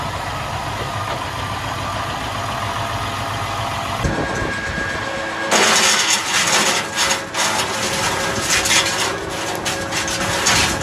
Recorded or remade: recorded